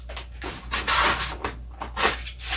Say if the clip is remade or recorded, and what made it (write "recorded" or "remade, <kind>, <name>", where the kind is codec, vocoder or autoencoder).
recorded